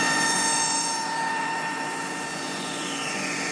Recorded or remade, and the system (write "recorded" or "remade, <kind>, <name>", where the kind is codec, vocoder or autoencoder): remade, vocoder, Vocos